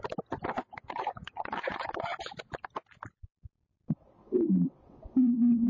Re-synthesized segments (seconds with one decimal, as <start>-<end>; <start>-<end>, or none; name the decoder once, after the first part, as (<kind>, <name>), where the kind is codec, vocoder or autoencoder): 0.4-2.4 (vocoder, WaveNeXt); 4.2-5.7